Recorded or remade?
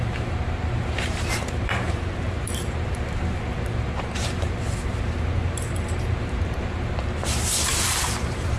remade